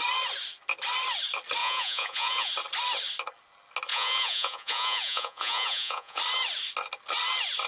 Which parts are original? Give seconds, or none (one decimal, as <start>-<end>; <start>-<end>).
0.0-1.6; 2.5-3.9; 6.2-7.7